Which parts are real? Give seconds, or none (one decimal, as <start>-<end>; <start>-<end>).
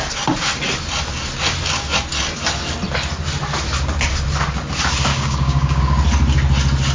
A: 0.0-5.1; 5.8-6.9